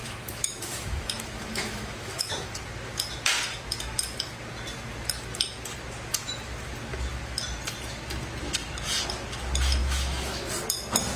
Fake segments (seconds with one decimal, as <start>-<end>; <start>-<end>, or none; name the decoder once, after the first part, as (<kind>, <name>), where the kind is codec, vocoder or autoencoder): 0.0-2.5 (autoencoder, DAC-VAE); 9.8-10.5